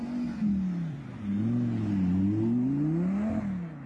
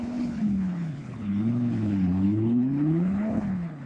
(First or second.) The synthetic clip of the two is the second